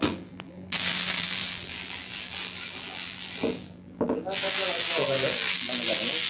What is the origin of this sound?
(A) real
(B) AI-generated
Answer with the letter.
B